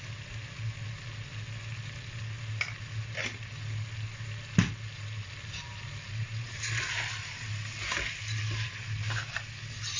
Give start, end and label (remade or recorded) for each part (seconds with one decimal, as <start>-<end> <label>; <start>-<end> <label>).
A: 0.0-5.7 recorded; 5.7-8.4 remade; 8.4-10.0 recorded